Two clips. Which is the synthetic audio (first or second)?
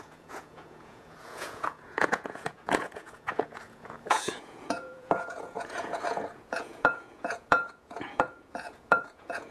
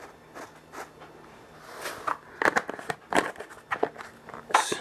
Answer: first